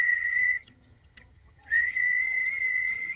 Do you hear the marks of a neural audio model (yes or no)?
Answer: yes